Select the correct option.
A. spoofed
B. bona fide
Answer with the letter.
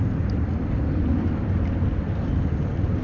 B